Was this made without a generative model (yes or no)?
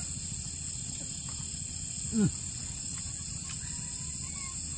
yes